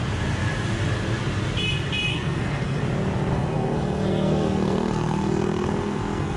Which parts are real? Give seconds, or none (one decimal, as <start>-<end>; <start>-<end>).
0.0-2.1; 2.8-3.3